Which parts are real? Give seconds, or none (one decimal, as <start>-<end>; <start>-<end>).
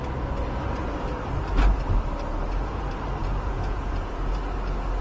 0.0-3.2; 4.3-5.0